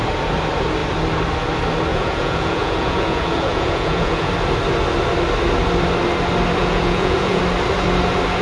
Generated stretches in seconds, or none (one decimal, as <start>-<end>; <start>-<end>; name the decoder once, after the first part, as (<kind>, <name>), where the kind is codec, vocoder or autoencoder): 1.9-4.3 (vocoder, Vocos); 6.6-7.4